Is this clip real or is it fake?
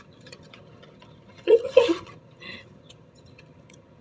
fake